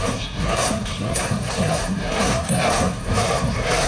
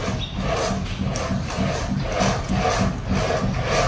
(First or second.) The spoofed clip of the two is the first